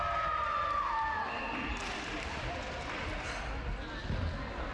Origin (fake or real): real